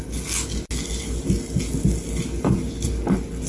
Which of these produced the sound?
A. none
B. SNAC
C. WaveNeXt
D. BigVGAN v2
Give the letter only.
A